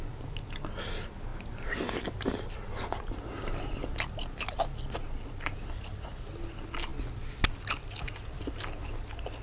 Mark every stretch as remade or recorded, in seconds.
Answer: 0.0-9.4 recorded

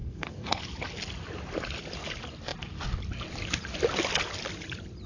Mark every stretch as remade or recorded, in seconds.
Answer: 0.0-0.6 remade; 0.6-5.1 recorded